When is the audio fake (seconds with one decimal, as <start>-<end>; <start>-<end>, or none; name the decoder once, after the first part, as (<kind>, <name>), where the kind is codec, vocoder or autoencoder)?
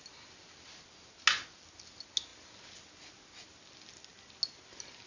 none